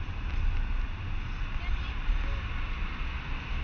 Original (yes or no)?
yes